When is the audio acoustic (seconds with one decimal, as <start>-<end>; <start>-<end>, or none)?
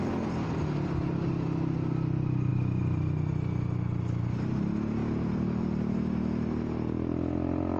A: 0.0-5.0; 5.6-7.8